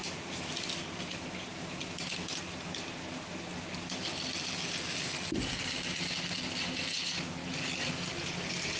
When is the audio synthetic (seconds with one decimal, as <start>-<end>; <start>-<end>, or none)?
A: none